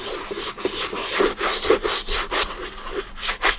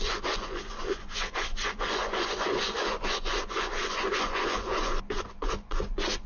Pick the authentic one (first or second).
first